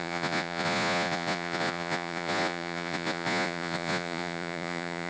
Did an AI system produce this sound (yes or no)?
yes